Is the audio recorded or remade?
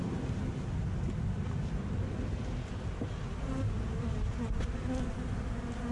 recorded